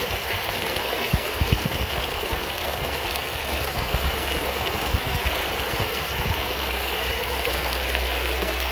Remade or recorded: remade